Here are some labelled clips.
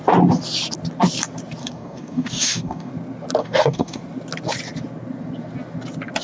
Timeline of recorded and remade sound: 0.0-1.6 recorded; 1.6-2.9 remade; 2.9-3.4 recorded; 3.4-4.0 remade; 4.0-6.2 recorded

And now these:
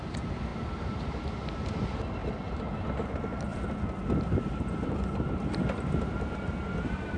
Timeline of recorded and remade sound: 0.0-7.2 recorded